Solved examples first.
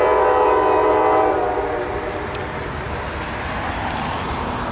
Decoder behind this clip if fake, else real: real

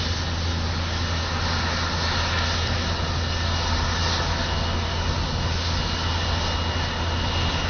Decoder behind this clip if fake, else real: real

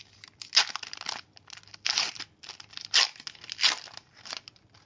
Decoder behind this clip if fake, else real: real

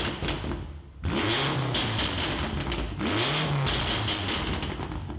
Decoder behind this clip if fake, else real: real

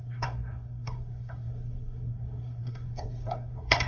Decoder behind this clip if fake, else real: fake, codec, SNAC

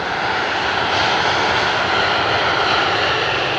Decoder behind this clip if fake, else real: real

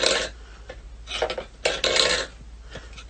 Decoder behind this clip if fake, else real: real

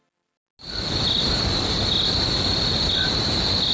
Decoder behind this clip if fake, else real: real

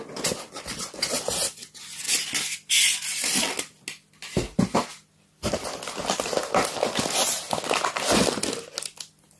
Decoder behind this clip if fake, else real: real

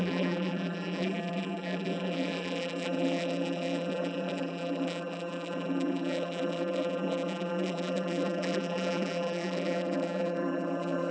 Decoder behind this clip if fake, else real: fake, vocoder, BigVGAN v2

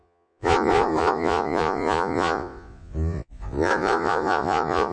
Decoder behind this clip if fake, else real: fake, vocoder, Vocos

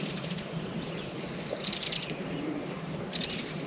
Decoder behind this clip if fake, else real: fake, vocoder, BigVGAN v2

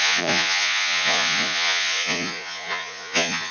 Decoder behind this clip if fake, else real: fake, vocoder, Vocos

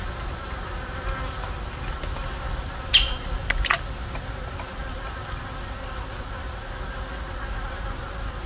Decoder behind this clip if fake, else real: real